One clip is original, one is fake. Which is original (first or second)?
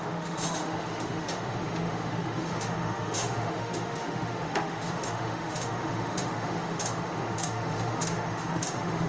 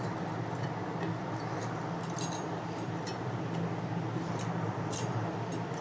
second